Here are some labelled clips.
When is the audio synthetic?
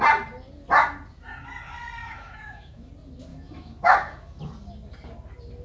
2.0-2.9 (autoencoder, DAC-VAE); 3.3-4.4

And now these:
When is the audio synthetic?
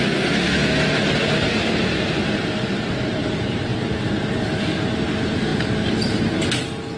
3.2-4.1 (vocoder, BigVGAN v2)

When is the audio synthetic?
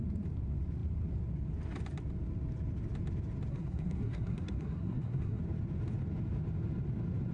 3.5-5.4 (codec, SNAC)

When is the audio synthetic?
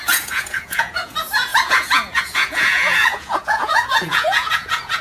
0.0-5.0 (vocoder, Vocos)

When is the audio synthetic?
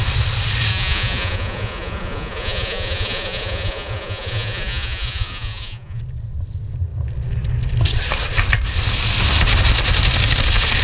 0.7-6.0 (vocoder, Vocos)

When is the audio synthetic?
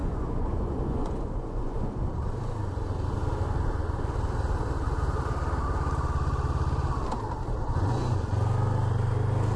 0.0-2.0 (vocoder, Vocos); 7.6-8.3